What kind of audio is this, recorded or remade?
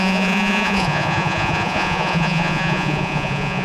remade